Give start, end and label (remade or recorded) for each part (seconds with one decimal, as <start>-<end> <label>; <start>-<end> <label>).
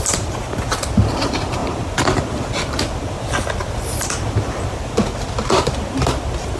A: 0.0-6.6 recorded